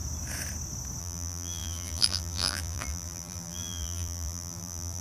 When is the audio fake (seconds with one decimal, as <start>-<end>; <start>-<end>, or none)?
1.0-5.0